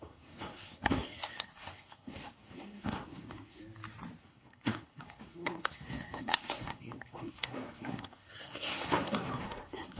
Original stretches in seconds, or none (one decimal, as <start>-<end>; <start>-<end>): 3.6-4.2